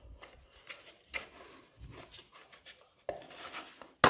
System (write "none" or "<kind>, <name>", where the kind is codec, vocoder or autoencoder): none